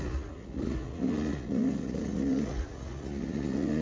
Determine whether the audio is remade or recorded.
remade